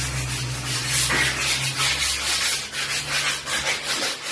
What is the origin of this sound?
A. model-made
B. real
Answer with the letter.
B